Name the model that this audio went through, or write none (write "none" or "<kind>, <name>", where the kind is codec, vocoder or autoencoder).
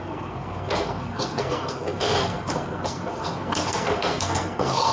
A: codec, SNAC